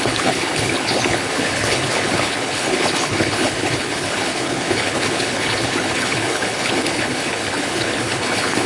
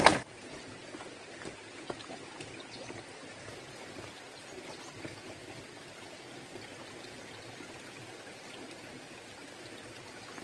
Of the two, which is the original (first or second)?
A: second